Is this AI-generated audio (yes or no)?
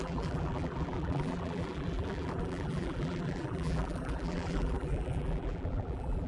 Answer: yes